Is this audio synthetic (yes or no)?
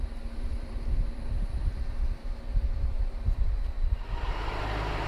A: yes